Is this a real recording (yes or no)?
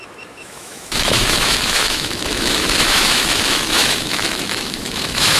no